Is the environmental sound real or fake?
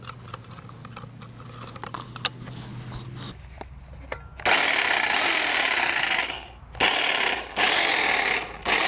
real